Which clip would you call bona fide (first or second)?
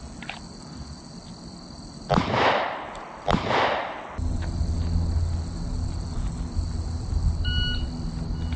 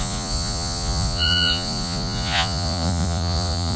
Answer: first